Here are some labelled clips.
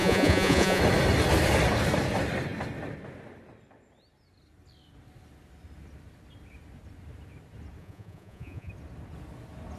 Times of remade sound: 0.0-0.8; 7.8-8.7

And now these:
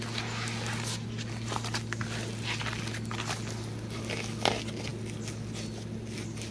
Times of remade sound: none

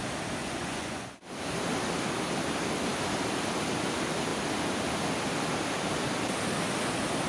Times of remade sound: 0.4-1.2

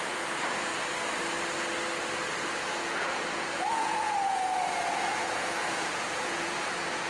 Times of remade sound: 0.0-0.7; 2.4-7.1